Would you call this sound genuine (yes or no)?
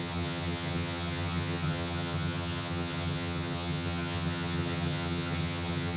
no